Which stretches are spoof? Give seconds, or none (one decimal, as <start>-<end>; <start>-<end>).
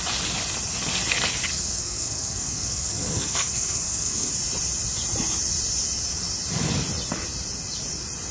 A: 1.5-4.3